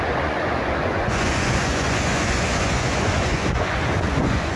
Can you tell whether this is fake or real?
fake